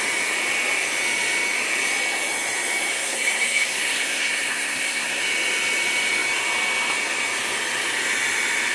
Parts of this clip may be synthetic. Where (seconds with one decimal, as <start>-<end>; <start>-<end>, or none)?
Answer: 2.9-5.2